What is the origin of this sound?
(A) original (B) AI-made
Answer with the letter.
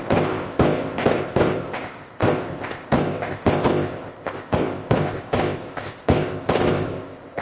B